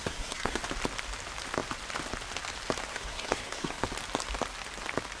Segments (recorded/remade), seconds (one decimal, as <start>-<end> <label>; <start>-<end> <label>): 0.0-0.6 remade; 0.6-2.9 recorded; 2.9-3.8 remade; 3.8-5.2 recorded